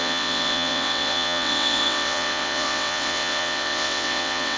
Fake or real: fake